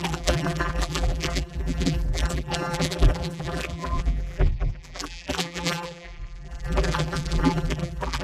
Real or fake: fake